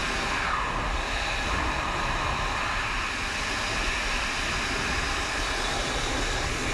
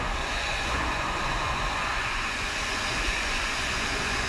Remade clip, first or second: second